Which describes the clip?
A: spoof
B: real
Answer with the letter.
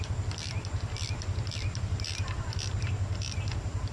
B